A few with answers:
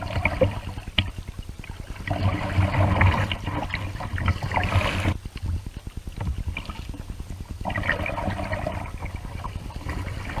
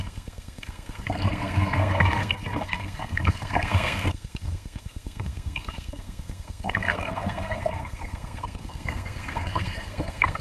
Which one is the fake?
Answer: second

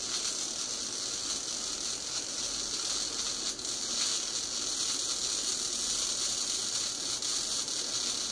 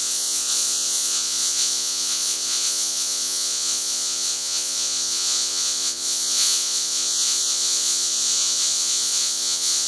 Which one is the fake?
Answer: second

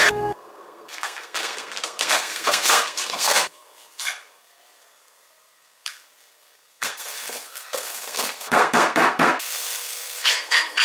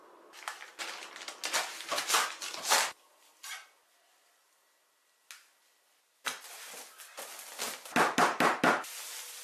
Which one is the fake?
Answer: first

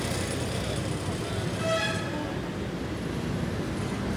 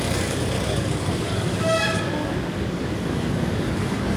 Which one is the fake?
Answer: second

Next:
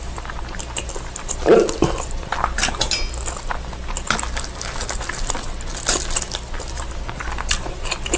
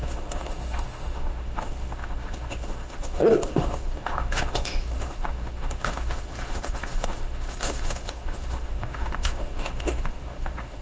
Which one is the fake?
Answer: second